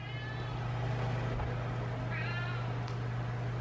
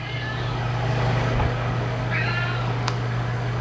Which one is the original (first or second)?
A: first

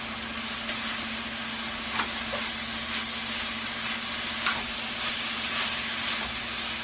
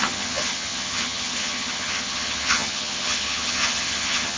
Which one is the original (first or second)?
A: first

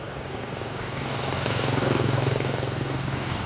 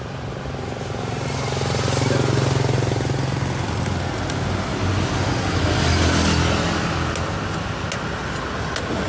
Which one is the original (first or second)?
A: second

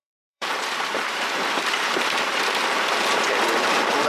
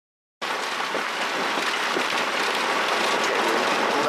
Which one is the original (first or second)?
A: second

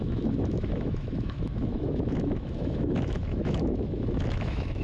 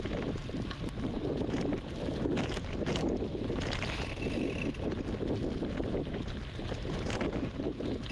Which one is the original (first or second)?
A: second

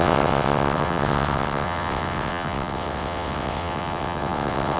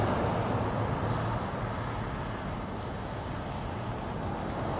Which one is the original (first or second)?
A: second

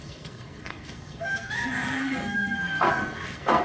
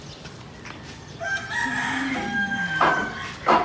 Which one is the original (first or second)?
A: second